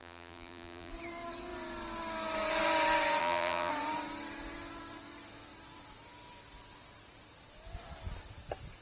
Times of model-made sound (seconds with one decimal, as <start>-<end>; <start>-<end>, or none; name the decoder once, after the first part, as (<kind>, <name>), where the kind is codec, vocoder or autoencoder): 0.0-0.9 (vocoder, BigVGAN v2); 3.2-3.7